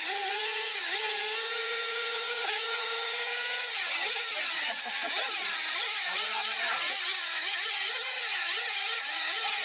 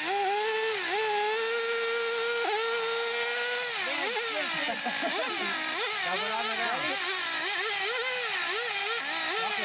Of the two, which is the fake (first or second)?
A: first